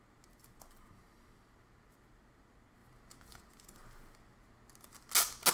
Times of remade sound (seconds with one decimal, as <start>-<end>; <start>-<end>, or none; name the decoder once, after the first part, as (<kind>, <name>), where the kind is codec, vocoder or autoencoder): none